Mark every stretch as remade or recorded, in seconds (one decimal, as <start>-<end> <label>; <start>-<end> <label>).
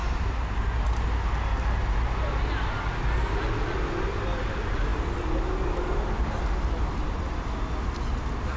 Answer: 0.0-8.6 recorded